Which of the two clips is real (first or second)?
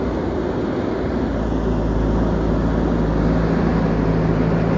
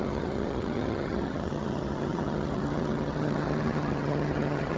first